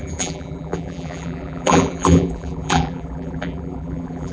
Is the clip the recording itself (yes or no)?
no